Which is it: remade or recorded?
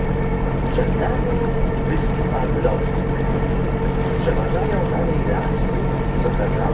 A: recorded